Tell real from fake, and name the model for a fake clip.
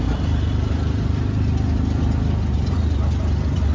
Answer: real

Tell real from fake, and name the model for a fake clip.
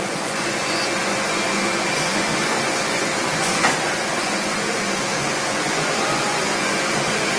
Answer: fake, vocoder, Vocos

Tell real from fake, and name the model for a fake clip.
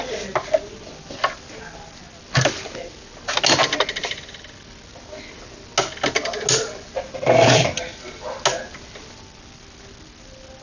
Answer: real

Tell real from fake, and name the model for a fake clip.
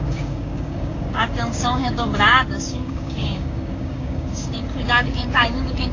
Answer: fake, codec, DAC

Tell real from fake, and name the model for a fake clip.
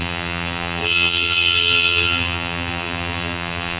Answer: fake, vocoder, BigVGAN v2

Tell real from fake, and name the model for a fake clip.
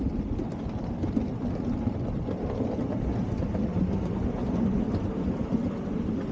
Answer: real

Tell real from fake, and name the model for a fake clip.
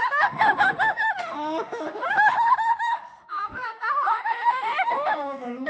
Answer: fake, autoencoder, DAC-VAE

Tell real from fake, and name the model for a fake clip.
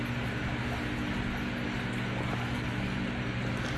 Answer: real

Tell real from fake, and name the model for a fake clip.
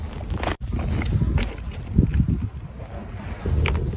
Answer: real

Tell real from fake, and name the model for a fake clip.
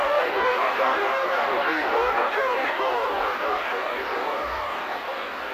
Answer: fake, codec, DAC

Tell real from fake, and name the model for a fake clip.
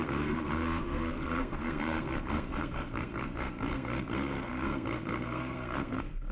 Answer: fake, codec, SNAC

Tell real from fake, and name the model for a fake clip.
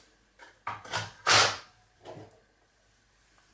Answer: real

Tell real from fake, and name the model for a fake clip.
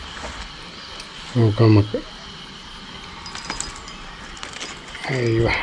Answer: real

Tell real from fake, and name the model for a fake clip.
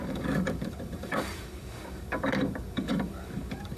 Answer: fake, codec, DAC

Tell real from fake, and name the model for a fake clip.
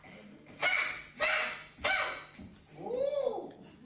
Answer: real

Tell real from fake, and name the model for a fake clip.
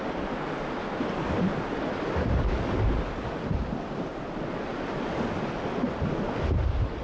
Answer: real